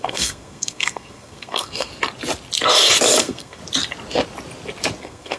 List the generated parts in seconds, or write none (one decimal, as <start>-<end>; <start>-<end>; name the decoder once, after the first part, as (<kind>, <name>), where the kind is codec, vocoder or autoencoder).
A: 0.0-1.9 (codec, SNAC); 3.2-3.6; 5.0-5.4